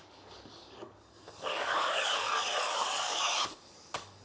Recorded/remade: remade